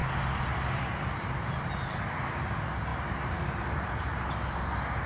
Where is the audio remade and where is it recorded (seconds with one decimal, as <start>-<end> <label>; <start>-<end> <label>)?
0.0-2.9 recorded; 2.9-4.0 remade; 4.0-5.1 recorded